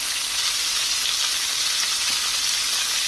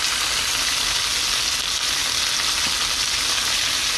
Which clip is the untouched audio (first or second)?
second